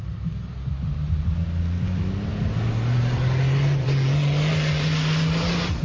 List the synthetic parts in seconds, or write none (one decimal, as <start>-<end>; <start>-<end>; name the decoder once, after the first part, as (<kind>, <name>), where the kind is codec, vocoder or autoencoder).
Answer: none